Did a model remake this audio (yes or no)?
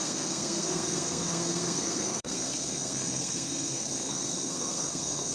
yes